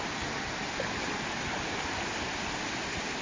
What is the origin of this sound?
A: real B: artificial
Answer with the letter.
A